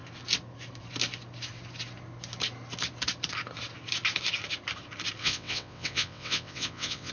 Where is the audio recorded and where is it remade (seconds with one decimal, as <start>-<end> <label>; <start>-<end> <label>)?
0.0-5.2 recorded; 5.2-7.1 remade